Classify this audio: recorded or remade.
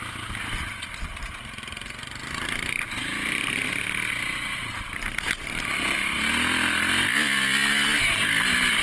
recorded